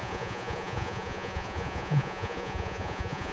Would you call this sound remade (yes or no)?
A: yes